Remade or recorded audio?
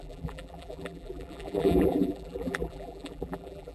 remade